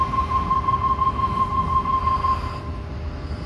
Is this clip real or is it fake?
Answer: real